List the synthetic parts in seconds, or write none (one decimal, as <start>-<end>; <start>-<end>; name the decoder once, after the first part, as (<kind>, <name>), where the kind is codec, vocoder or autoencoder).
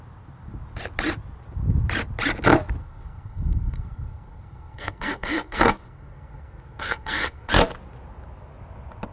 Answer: 2.8-7.5 (codec, SNAC)